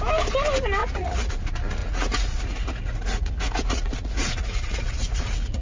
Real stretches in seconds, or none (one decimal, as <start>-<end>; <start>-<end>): 0.0-0.8; 1.3-1.8